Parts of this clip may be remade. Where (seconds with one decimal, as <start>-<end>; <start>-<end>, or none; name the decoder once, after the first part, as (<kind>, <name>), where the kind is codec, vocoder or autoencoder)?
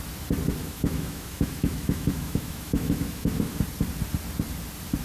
0.6-3.6 (autoencoder, DAC-VAE)